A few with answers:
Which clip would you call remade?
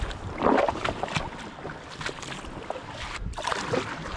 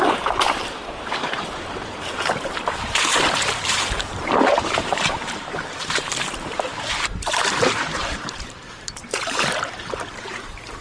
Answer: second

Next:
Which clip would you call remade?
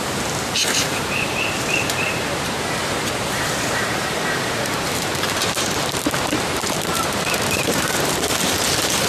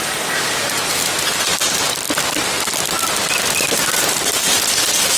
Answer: first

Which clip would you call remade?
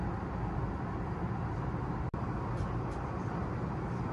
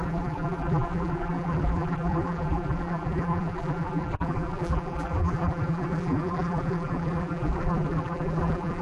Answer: second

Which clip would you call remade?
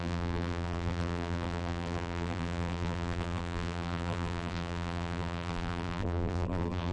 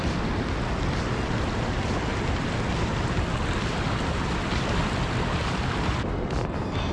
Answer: first